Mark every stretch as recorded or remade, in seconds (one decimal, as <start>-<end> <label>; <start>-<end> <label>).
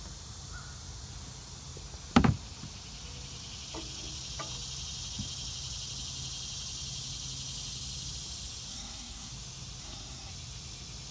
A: 0.0-8.7 recorded; 8.7-9.3 remade; 9.3-9.8 recorded; 9.8-10.3 remade; 10.3-11.1 recorded